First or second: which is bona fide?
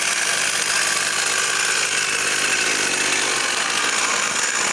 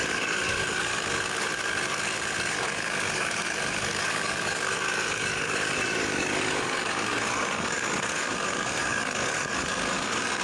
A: first